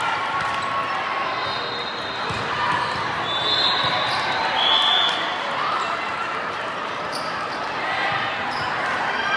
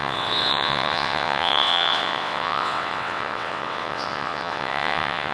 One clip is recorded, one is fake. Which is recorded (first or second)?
first